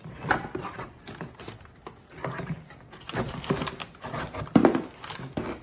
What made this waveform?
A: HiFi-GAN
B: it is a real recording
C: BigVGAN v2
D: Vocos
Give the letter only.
B